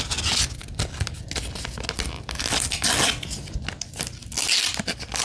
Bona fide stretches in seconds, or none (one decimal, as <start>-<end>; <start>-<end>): 0.0-5.2